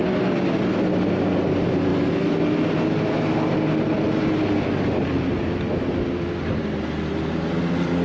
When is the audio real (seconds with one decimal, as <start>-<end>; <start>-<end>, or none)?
0.0-8.0